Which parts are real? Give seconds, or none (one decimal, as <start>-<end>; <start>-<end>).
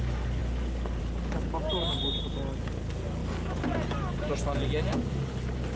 0.0-5.8